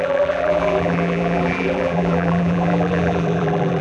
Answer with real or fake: fake